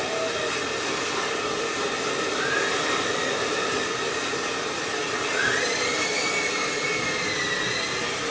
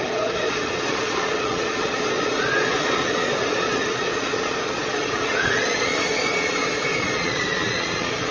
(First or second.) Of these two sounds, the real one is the first